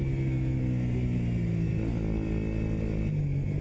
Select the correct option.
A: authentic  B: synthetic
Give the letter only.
A